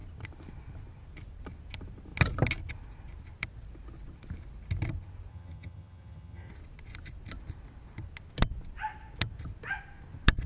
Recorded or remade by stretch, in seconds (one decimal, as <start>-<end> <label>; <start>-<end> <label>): 0.0-5.3 recorded; 5.3-6.5 remade; 6.5-10.5 recorded